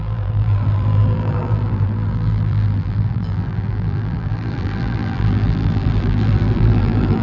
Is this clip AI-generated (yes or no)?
yes